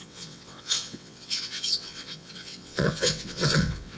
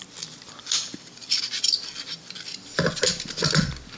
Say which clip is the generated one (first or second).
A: first